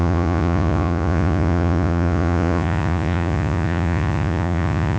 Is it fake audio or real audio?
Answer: fake